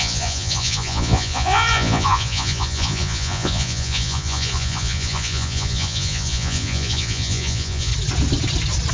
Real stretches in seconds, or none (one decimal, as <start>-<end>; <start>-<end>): 7.9-8.9